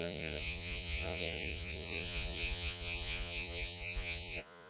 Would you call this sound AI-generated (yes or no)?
yes